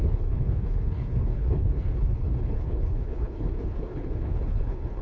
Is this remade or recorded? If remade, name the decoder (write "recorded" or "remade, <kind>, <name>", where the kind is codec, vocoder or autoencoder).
remade, codec, HILCodec